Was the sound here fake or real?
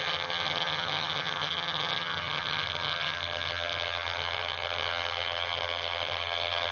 fake